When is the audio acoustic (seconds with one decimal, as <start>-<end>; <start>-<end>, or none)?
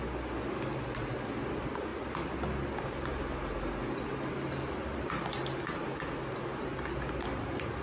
0.0-7.8